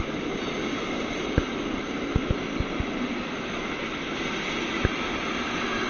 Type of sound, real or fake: real